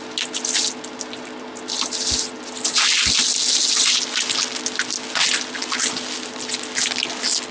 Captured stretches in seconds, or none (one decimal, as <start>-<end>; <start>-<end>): 0.0-7.5